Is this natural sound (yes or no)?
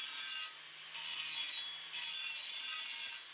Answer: yes